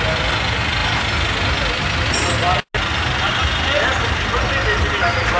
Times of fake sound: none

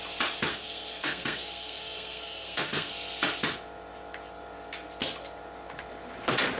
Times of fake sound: 0.5-2.9 (codec, SNAC)

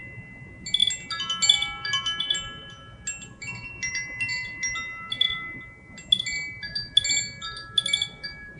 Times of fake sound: none

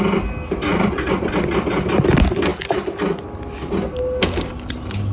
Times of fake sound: 0.7-1.3 (vocoder, BigVGAN v2)

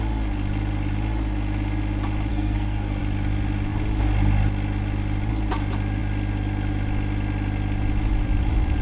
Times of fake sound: 2.3-3.0 (codec, SNAC)

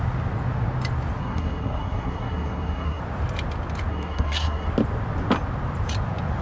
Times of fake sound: 1.2-3.0 (codec, SNAC); 3.9-4.7

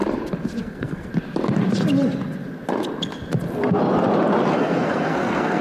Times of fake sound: 0.6-1.1 (codec, SNAC); 4.5-5.6

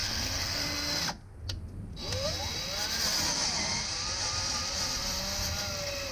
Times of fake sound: 0.0-0.6 (codec, SNAC)